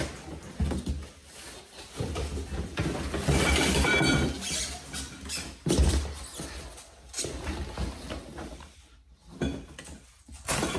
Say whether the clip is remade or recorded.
recorded